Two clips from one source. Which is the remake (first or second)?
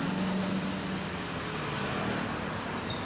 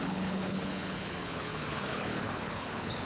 second